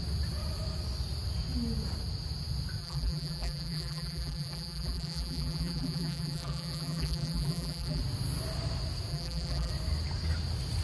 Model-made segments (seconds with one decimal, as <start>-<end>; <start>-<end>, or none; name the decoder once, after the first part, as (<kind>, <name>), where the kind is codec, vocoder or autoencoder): 2.8-8.0 (vocoder, BigVGAN v2); 9.1-9.7